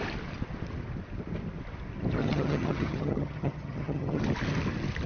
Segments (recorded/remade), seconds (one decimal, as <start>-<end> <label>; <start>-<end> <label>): 0.0-2.2 recorded; 2.2-4.2 remade; 4.2-5.1 recorded